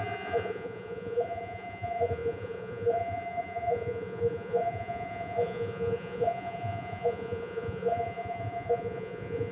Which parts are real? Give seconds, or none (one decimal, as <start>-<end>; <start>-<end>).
none